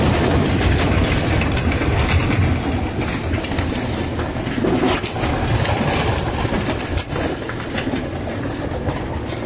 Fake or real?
real